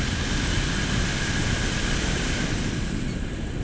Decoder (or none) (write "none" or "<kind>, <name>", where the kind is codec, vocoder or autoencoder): none